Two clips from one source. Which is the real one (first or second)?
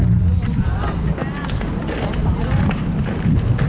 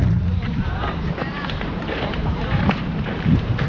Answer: first